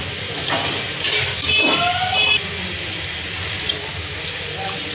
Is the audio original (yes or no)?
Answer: yes